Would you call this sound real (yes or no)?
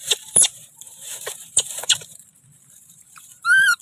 no